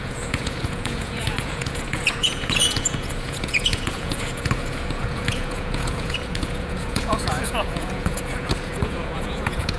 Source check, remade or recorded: remade